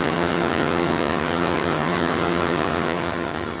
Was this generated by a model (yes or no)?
yes